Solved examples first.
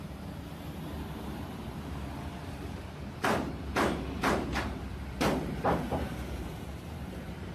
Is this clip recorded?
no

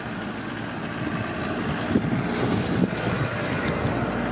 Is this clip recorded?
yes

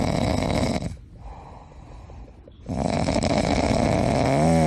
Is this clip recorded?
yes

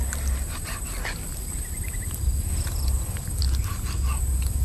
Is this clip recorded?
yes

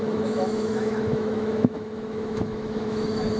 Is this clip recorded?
no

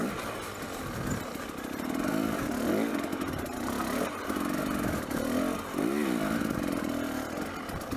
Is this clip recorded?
yes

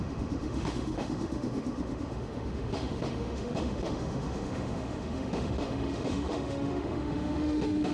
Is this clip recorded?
no